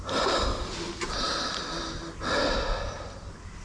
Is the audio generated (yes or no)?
no